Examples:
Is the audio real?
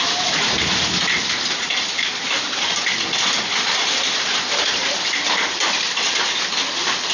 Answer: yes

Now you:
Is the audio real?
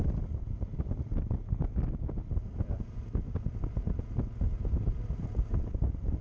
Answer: yes